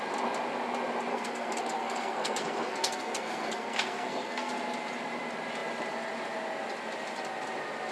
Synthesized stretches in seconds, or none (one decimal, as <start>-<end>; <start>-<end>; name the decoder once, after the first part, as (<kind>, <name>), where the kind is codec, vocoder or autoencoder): 1.1-4.5 (codec, SNAC)